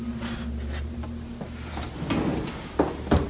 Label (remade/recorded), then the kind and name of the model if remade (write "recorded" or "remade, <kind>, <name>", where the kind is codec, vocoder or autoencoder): recorded